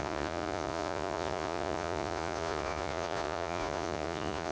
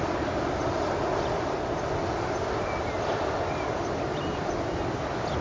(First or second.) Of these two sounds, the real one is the second